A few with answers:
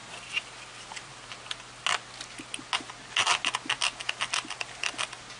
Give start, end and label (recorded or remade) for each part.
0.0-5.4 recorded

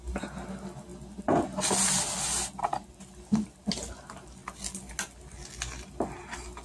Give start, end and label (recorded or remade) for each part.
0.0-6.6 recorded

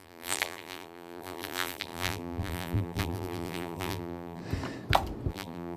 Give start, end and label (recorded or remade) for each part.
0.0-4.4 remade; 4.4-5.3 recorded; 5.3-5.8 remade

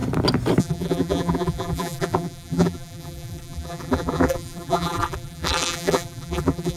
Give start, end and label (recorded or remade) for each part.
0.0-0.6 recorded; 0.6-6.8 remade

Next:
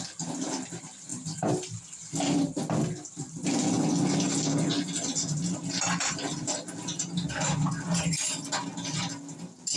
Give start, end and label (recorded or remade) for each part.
0.0-1.1 recorded; 1.1-1.8 remade; 1.8-4.7 recorded; 4.7-5.2 remade; 5.2-9.8 recorded

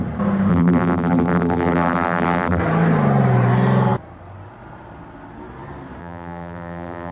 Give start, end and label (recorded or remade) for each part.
0.0-0.5 recorded; 0.5-2.6 remade; 2.6-6.0 recorded; 6.0-7.1 remade